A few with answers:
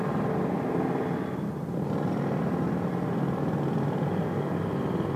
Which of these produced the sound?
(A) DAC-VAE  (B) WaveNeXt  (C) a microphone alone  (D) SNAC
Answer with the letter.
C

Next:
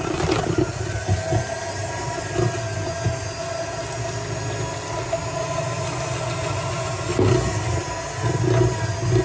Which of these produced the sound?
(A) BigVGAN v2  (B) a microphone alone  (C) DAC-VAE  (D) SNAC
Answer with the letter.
B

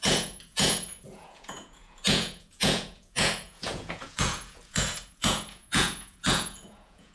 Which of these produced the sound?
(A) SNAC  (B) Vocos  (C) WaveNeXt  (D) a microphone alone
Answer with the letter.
B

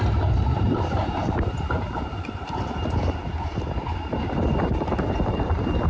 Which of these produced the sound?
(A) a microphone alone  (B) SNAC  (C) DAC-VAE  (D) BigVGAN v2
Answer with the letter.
D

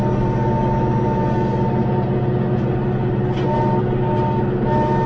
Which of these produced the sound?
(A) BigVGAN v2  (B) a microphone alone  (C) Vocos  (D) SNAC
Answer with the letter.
B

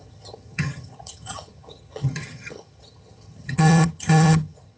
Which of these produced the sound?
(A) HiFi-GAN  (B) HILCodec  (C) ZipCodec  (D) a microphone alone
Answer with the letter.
A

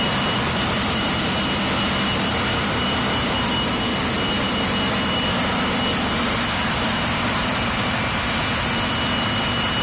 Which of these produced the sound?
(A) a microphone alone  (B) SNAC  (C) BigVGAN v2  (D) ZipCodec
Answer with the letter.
C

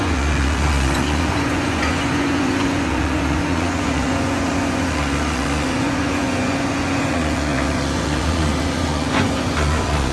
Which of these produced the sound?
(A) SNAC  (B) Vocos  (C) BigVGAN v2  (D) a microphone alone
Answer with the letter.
B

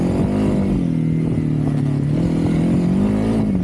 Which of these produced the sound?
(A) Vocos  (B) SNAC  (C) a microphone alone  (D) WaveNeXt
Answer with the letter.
C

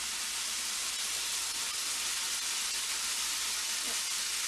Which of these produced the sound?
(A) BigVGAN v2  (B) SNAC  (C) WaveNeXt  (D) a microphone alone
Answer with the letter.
D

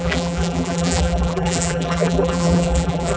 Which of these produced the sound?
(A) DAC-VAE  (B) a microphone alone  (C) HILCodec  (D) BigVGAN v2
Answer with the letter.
D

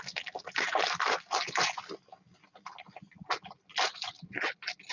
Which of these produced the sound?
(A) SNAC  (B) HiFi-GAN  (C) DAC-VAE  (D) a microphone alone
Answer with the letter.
D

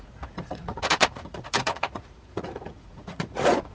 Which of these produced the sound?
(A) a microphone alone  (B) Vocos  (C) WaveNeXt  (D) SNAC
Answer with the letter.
B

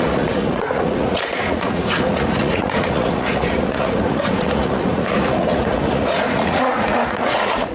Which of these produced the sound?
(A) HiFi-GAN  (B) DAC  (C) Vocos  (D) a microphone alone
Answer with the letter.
C